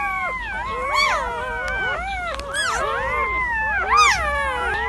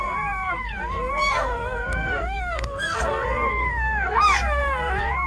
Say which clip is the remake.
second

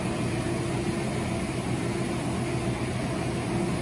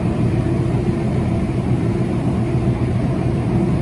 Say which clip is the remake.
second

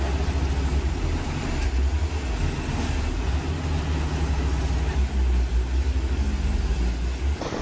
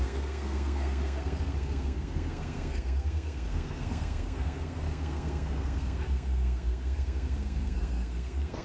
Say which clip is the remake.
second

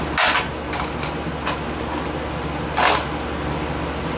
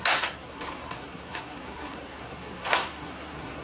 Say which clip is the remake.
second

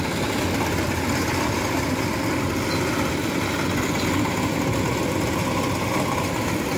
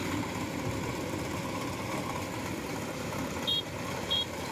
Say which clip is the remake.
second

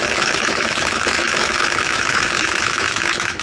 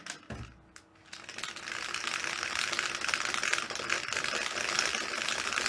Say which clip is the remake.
first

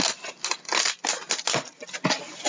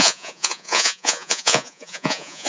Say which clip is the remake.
second